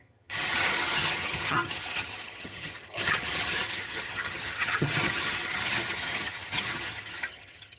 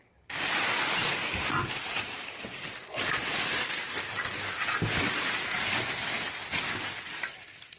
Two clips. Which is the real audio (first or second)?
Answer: second